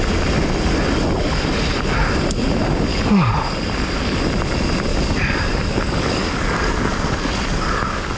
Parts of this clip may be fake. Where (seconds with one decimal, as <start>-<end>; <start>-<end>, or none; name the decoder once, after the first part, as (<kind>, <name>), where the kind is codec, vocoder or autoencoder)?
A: 2.9-3.4 (codec, DAC); 4.9-8.2